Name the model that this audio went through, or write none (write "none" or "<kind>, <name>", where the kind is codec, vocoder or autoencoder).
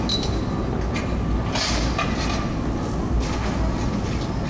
none